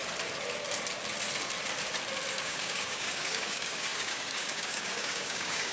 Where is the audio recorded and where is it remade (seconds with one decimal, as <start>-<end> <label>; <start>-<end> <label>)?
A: 0.0-2.3 recorded; 2.3-5.7 remade